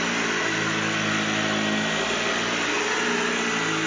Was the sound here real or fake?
real